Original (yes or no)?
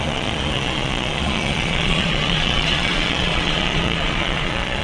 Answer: no